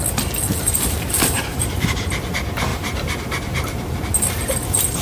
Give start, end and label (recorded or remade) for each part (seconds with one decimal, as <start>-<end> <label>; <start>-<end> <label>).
0.0-0.5 recorded; 0.5-1.7 remade; 1.7-2.7 recorded; 2.7-4.0 remade; 4.0-5.0 recorded